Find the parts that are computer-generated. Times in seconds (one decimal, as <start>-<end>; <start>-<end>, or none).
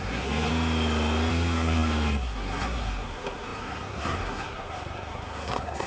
0.0-0.5; 1.3-5.9